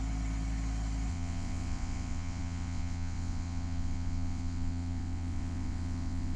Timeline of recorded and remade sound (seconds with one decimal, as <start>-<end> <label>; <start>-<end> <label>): 0.0-1.1 recorded; 1.1-6.4 remade